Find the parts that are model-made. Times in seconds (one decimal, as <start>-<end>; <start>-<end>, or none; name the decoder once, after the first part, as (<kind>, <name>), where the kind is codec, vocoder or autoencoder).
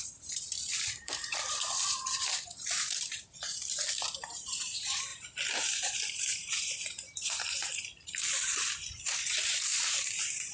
0.0-10.5 (vocoder, BigVGAN v2)